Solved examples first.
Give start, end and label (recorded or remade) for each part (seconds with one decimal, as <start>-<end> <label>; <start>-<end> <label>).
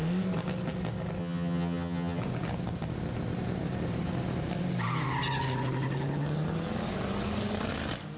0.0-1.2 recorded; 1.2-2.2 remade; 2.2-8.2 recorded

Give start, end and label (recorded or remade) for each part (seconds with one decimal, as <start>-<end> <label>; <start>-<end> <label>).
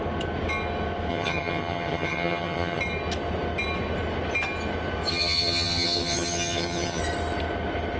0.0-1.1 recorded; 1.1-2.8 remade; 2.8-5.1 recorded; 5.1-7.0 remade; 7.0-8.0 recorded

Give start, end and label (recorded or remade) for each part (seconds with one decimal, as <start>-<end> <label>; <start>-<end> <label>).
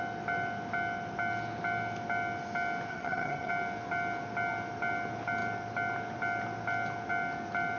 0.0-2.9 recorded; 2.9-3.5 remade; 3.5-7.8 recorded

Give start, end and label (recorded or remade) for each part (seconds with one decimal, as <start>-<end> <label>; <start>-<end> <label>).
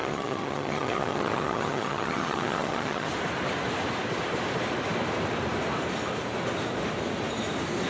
0.0-3.1 remade; 3.1-7.9 recorded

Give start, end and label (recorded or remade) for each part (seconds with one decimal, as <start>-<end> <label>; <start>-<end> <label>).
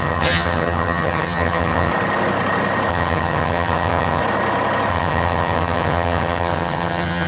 0.0-1.9 remade; 1.9-2.9 recorded; 2.9-4.2 remade; 4.2-4.9 recorded; 4.9-7.3 remade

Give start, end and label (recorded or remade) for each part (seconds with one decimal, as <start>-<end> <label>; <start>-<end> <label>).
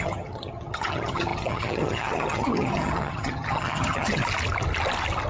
0.0-4.2 remade; 4.2-5.3 recorded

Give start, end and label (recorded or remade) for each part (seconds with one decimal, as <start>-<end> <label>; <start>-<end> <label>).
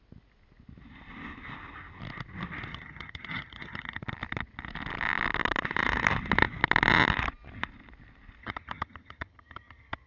0.0-2.7 recorded; 2.7-4.0 remade; 4.0-8.4 recorded; 8.4-10.1 remade